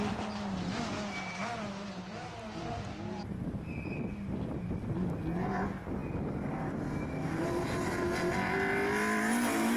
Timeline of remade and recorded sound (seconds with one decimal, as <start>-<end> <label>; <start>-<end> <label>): 0.0-1.4 recorded; 1.4-3.7 remade; 3.7-9.8 recorded